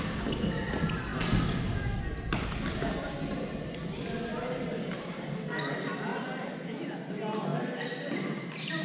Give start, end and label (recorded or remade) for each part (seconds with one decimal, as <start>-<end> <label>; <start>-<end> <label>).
0.0-8.8 recorded